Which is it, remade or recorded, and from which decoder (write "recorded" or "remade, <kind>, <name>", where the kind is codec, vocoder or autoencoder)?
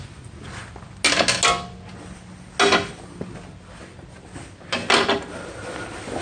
recorded